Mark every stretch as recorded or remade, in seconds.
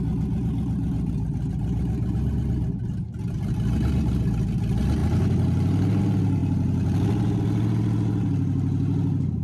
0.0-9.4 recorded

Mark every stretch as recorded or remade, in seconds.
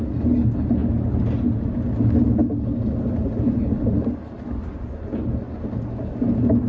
0.0-6.7 recorded